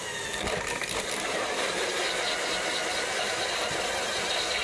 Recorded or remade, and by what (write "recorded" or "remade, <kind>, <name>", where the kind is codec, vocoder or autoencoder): recorded